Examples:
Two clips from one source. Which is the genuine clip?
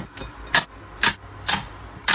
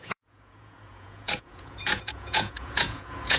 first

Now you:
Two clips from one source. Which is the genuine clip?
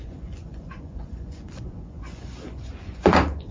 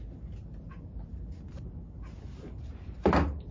second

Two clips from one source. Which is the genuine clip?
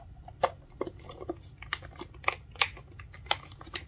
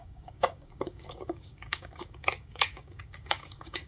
first